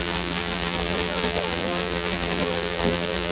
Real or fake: fake